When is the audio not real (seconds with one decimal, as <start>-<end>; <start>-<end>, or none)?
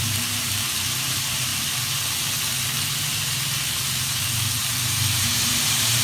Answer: 0.0-1.5; 3.0-6.0